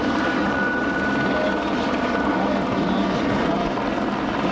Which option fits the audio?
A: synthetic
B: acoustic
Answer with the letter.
B